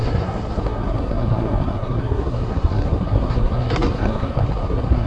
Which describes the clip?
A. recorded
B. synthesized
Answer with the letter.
B